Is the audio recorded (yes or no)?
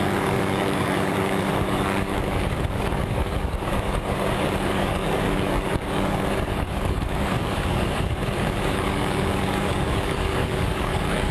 no